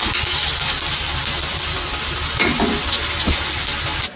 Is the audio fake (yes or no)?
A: no